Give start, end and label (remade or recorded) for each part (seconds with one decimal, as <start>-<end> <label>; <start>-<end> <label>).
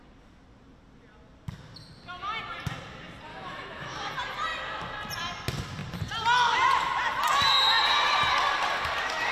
0.0-3.3 recorded; 3.3-4.1 remade; 4.1-9.3 recorded